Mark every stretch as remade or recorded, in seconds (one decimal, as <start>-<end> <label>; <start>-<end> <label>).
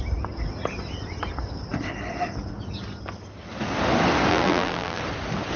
0.0-4.3 recorded; 4.3-5.0 remade; 5.0-5.6 recorded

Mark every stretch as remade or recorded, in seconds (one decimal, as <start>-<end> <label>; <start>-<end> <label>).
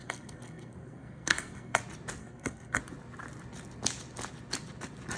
0.0-1.8 remade; 1.8-2.2 recorded; 2.2-2.8 remade; 2.8-5.2 recorded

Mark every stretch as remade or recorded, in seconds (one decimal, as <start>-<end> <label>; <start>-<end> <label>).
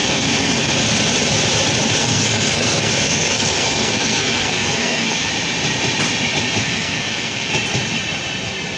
0.0-0.7 remade; 0.7-2.0 recorded; 2.0-5.3 remade; 5.3-6.6 recorded; 6.6-7.5 remade; 7.5-8.8 recorded